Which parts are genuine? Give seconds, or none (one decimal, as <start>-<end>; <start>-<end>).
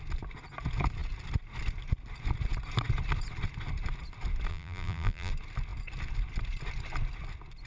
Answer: 0.0-4.5; 5.3-7.7